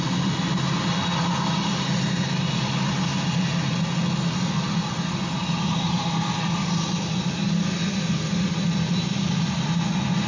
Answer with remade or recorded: recorded